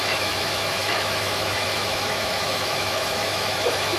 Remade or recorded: remade